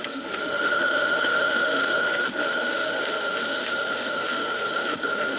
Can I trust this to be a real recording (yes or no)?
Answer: no